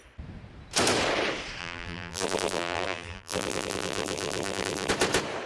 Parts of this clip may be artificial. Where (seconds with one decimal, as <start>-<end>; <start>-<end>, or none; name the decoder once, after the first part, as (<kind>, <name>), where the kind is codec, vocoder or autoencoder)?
1.6-4.9 (vocoder, BigVGAN v2)